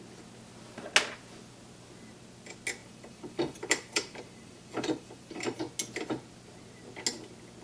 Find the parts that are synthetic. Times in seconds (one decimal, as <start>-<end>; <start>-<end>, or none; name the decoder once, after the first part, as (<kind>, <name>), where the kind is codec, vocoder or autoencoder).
2.8-5.6 (vocoder, BigVGAN v2)